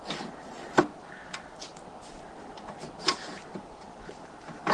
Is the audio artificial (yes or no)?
no